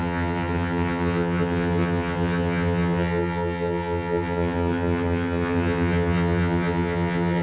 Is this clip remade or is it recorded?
remade